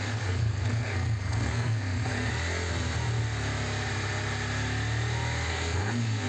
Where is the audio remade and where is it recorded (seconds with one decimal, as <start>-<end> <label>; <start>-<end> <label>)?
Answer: 0.0-2.3 remade; 2.3-5.5 recorded; 5.5-6.3 remade